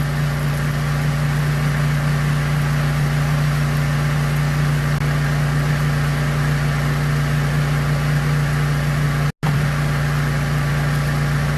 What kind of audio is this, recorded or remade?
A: recorded